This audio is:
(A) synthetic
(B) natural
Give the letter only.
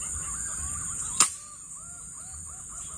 B